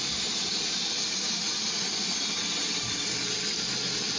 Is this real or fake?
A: real